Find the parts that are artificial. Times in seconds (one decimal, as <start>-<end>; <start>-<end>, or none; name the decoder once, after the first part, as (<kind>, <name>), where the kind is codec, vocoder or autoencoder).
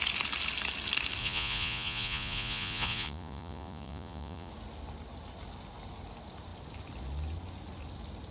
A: 1.2-4.5 (vocoder, Vocos)